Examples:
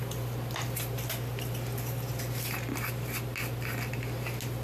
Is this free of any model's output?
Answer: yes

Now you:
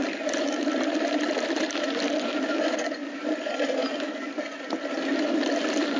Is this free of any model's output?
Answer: yes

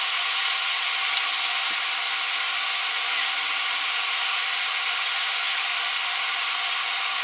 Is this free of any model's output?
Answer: yes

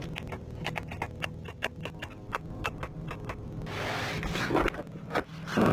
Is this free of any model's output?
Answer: yes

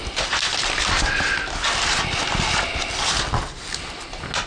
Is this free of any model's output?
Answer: yes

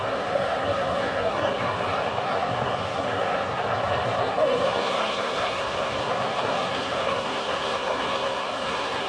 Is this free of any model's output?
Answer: no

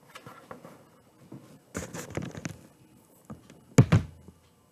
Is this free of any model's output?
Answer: yes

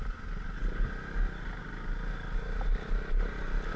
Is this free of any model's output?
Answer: yes